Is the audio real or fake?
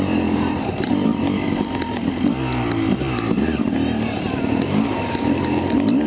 real